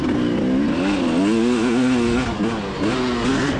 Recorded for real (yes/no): yes